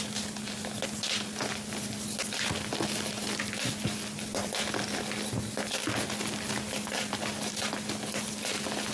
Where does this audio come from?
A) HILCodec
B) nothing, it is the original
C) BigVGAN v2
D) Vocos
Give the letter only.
B